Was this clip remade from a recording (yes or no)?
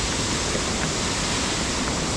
no